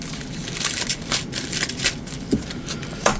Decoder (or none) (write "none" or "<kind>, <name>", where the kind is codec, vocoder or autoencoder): none